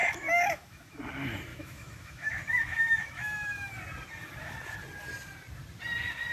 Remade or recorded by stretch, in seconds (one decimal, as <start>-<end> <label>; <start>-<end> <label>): 0.0-1.0 remade; 1.0-1.5 recorded; 1.5-3.7 remade; 3.7-6.3 recorded